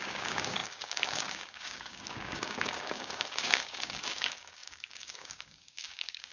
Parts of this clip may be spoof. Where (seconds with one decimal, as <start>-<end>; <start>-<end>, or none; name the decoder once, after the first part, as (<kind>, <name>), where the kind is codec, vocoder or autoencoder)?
0.0-6.3 (codec, DAC)